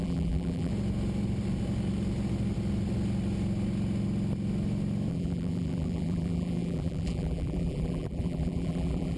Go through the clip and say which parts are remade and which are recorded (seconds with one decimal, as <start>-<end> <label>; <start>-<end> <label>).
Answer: 0.0-0.7 remade; 0.7-5.1 recorded; 5.1-9.2 remade